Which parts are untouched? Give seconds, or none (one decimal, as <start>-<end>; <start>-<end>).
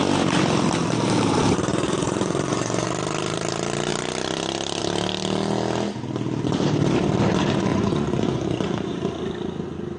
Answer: 0.0-1.7; 2.9-7.7; 9.0-10.0